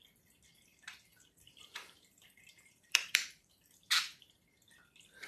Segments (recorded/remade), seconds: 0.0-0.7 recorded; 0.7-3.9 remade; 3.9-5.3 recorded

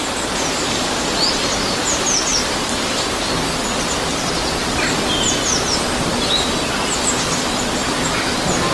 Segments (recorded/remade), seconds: 0.0-2.3 recorded; 2.3-2.9 remade; 2.9-7.8 recorded; 7.8-8.7 remade

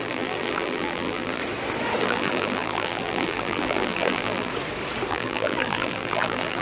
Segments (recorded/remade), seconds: 0.0-1.4 remade; 1.4-2.0 recorded; 2.0-4.5 remade; 4.5-5.1 recorded; 5.1-6.6 remade

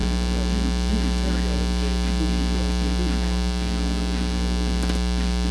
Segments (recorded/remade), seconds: 0.0-5.5 recorded